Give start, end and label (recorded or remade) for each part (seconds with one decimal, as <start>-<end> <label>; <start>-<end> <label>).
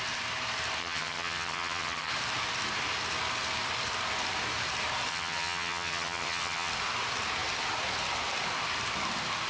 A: 0.0-0.8 recorded; 0.8-2.1 remade; 2.1-5.1 recorded; 5.1-6.7 remade; 6.7-9.5 recorded